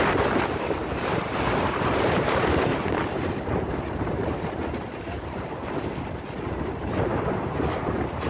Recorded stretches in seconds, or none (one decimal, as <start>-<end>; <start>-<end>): 0.8-1.6